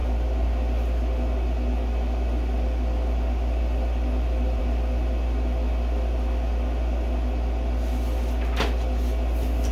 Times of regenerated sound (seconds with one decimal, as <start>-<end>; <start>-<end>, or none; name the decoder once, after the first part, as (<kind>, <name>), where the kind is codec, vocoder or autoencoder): none